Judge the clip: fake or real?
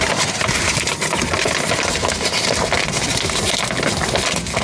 real